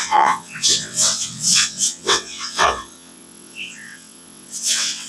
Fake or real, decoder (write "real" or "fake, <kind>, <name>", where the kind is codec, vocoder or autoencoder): fake, vocoder, WaveNeXt